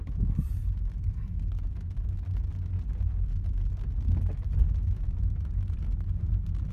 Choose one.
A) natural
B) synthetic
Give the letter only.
A